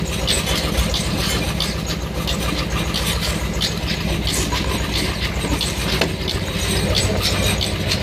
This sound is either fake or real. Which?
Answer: real